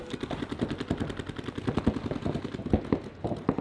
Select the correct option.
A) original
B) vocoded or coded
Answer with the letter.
A